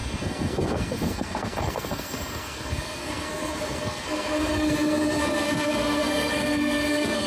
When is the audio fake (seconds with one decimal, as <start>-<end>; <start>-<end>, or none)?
0.0-7.3